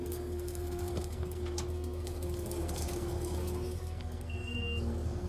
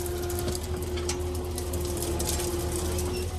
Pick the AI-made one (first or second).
first